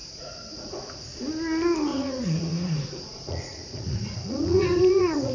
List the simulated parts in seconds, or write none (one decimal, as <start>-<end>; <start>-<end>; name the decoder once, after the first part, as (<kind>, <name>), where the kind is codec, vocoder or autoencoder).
0.0-1.2 (vocoder, Vocos); 1.9-5.3